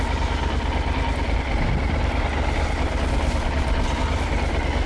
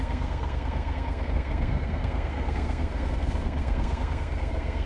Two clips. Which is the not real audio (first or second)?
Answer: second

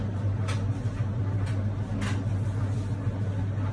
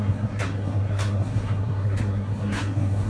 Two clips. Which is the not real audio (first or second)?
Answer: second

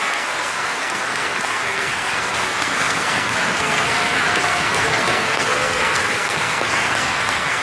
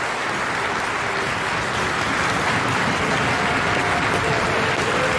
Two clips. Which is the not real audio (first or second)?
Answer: first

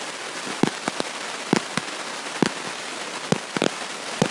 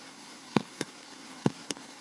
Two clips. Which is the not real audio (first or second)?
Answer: second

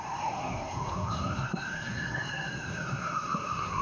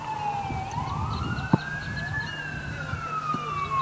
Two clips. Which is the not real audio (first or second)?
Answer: first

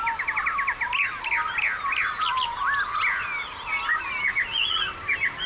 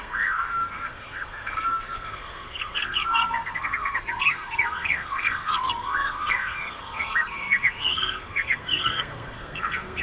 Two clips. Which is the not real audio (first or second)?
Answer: second